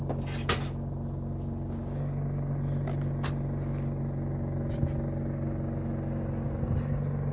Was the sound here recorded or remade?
recorded